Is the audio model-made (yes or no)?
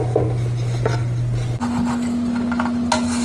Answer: no